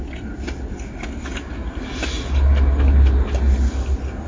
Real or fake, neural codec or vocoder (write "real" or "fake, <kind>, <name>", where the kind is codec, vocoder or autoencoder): real